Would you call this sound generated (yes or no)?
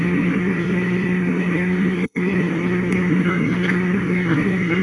yes